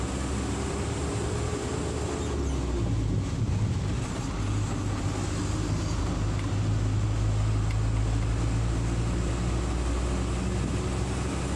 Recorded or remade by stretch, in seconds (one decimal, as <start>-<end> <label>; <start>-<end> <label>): 0.0-1.0 recorded; 1.0-1.7 remade; 1.7-11.6 recorded